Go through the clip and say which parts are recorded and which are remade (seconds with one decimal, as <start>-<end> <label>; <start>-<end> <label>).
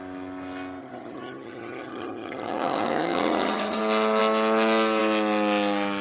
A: 0.0-0.8 recorded; 0.8-3.8 remade; 3.8-6.0 recorded